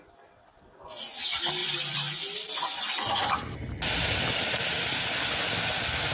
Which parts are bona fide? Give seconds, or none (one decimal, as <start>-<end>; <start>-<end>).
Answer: 0.0-6.1